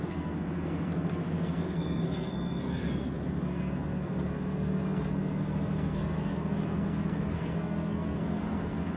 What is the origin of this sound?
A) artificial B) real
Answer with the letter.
A